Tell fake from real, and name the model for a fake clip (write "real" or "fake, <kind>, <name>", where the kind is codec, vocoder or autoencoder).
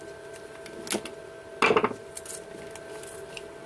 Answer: real